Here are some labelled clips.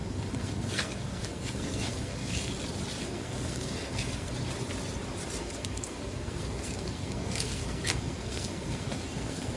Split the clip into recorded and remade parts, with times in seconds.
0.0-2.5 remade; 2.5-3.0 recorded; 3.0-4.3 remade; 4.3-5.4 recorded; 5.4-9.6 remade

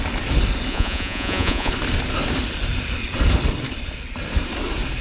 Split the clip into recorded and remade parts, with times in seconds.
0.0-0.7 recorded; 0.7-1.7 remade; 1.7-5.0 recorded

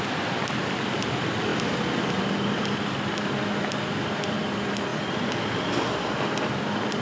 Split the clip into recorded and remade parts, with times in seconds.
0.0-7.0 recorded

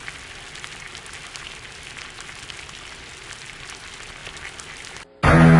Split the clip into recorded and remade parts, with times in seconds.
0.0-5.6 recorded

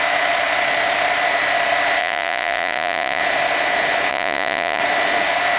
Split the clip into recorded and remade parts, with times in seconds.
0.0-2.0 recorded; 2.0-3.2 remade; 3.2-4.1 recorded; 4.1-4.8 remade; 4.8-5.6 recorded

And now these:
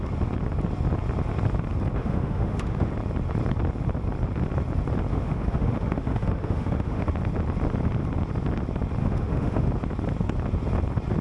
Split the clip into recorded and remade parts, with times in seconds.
0.0-2.0 recorded; 2.0-2.9 remade; 2.9-5.1 recorded; 5.1-7.1 remade; 7.1-9.0 recorded; 9.0-9.7 remade; 9.7-11.2 recorded